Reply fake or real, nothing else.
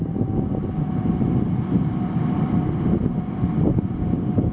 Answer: real